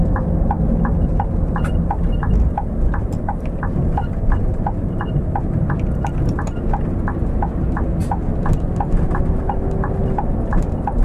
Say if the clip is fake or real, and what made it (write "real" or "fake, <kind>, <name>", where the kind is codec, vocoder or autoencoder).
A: real